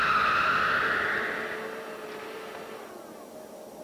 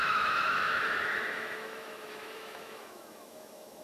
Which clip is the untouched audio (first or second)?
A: first